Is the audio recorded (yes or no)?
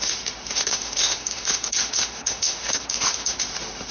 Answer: no